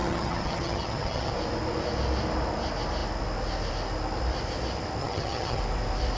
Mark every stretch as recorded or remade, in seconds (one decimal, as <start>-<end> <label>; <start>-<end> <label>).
0.0-1.3 remade; 1.3-5.0 recorded; 5.0-5.6 remade; 5.6-6.2 recorded